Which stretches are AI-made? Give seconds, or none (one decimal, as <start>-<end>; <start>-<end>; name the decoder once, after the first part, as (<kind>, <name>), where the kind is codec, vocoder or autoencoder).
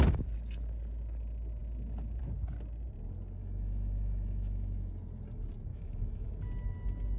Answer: 3.4-4.9 (autoencoder, DAC-VAE); 5.7-6.3